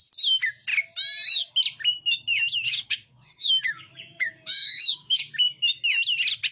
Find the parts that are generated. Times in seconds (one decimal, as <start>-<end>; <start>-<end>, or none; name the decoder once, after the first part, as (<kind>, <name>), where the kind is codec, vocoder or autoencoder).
2.3-5.3 (codec, DAC)